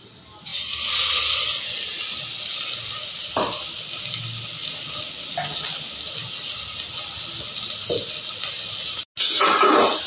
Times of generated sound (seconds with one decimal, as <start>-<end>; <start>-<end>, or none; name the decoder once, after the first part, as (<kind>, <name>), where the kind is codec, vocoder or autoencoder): none